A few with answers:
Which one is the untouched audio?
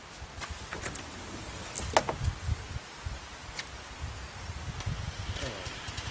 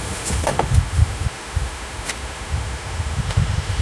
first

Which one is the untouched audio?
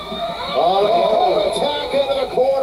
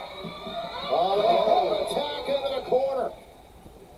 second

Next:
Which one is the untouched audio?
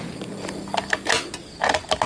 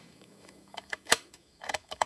first